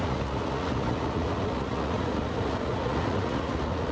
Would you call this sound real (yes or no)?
no